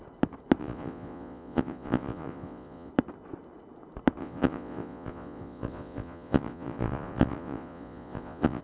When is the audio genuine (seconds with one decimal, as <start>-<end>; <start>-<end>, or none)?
0.0-0.6; 2.9-4.2